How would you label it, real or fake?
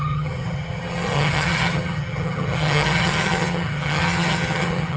fake